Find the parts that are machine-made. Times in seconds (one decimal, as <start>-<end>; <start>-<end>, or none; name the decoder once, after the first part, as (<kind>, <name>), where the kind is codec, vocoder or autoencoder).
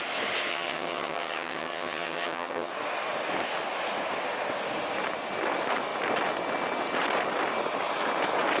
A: 0.5-2.7 (vocoder, HiFi-GAN)